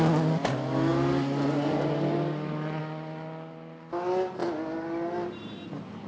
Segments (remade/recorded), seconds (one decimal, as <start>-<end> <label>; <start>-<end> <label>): 0.0-6.1 recorded